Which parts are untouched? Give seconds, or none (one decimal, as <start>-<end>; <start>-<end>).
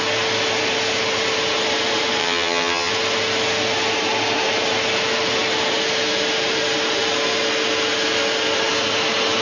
0.0-2.2; 2.9-9.4